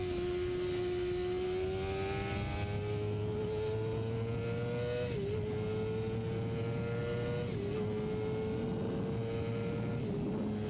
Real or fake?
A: real